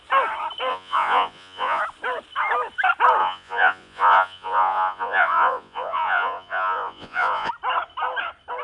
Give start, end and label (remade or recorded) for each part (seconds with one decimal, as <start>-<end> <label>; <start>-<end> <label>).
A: 0.0-0.7 recorded; 0.7-1.8 remade; 1.8-3.2 recorded; 3.2-7.5 remade; 7.5-8.6 recorded